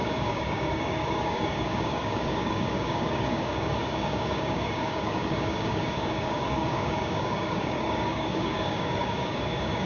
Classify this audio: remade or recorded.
remade